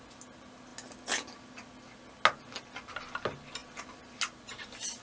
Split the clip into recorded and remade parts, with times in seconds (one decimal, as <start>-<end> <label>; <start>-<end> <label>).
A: 0.0-5.0 recorded